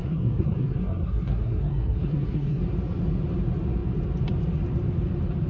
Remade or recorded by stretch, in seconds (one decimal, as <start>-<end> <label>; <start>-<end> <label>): 0.0-2.6 remade; 2.6-5.5 recorded